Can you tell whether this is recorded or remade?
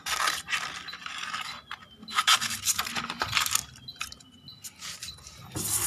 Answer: recorded